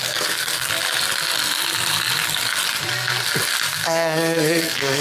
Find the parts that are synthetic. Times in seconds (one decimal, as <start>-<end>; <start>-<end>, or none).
0.0-0.7; 3.7-5.0